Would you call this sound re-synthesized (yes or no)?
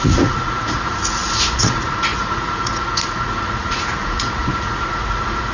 yes